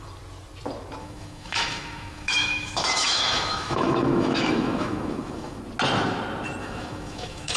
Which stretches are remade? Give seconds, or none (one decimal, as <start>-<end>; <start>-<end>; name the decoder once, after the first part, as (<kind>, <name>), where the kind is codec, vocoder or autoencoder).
1.0-5.6 (autoencoder, DAC-VAE); 6.6-7.6